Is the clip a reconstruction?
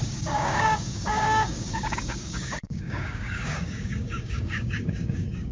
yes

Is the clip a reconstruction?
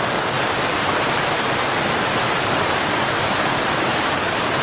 no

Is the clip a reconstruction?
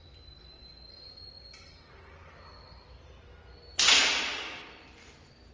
no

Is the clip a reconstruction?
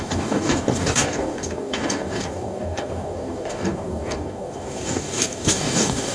yes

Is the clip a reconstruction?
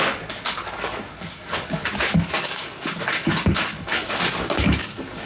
yes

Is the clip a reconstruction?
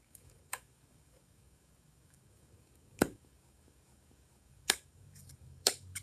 yes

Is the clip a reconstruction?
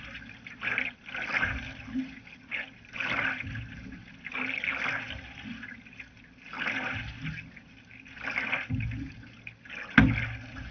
no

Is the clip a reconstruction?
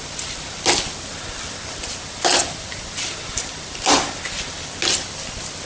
no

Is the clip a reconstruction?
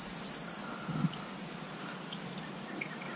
no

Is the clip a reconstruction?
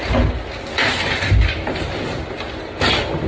no